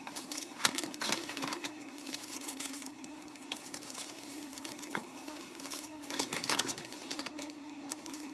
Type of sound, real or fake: fake